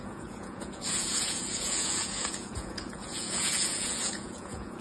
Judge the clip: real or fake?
fake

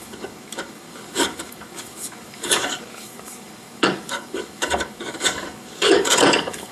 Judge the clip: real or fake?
fake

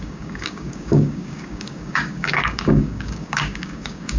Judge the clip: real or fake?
fake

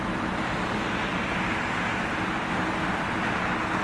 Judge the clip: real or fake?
real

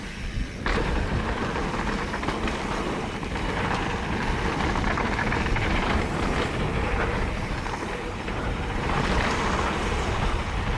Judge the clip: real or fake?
fake